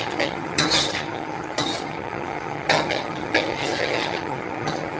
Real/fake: fake